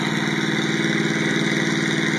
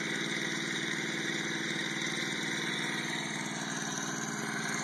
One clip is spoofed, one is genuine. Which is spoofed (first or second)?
second